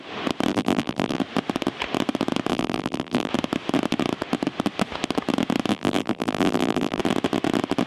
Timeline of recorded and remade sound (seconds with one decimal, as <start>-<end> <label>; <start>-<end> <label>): 0.0-0.5 recorded; 0.5-1.2 remade; 1.2-2.5 recorded; 2.5-3.3 remade; 3.3-5.7 recorded; 5.7-7.0 remade; 7.0-7.9 recorded